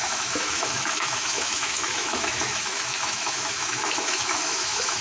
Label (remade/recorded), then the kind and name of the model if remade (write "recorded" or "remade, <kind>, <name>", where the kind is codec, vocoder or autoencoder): remade, autoencoder, DAC-VAE